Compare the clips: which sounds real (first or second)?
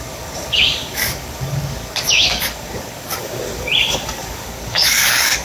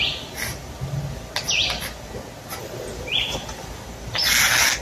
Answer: second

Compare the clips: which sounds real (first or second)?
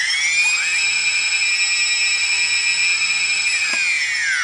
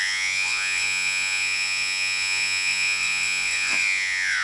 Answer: first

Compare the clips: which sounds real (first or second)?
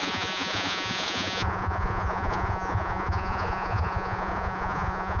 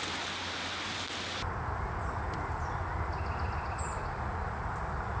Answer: second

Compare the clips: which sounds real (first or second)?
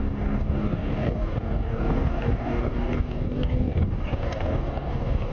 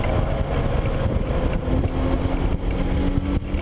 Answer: second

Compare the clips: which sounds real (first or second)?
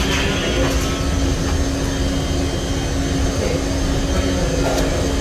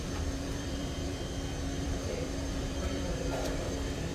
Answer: first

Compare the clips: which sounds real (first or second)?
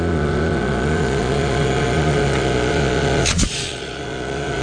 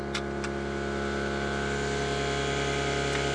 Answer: second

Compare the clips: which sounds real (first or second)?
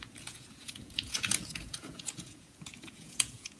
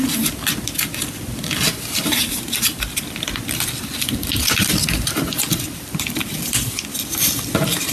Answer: second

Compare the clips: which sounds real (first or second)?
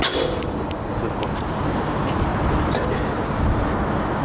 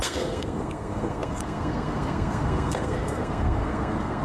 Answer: first